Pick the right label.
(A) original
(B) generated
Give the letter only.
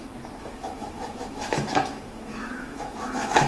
B